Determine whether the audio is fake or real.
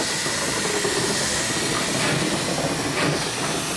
real